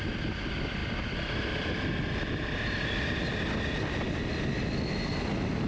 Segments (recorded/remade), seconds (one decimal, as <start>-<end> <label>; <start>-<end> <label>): 0.0-5.7 recorded

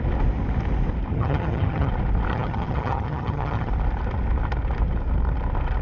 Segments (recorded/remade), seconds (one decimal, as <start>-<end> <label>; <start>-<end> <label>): 0.0-1.1 recorded; 1.1-1.9 remade; 1.9-2.3 recorded; 2.3-3.7 remade; 3.7-5.8 recorded

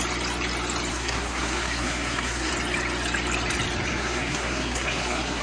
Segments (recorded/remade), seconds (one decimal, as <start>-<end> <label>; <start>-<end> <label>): 0.0-0.9 recorded; 0.9-2.5 remade; 2.5-3.9 recorded; 3.9-5.4 remade